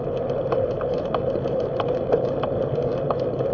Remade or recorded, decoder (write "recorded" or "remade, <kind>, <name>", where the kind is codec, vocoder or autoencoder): recorded